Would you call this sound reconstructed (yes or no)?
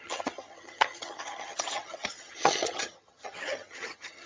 yes